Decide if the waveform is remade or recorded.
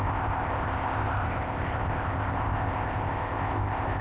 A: remade